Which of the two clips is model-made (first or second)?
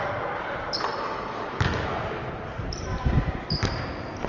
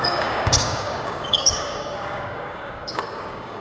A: second